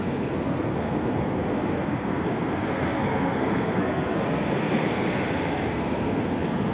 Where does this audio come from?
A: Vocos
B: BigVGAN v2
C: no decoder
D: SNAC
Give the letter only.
D